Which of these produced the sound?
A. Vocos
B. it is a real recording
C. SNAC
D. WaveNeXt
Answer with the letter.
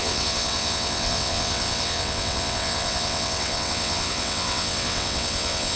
D